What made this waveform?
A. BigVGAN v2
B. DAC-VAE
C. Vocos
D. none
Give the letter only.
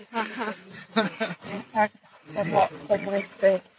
C